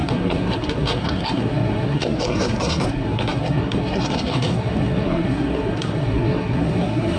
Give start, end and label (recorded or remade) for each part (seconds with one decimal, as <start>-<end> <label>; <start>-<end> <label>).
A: 0.0-7.2 remade